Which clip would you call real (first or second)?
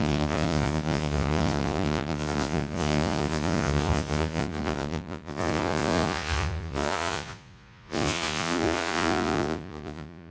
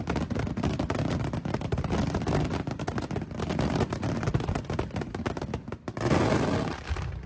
second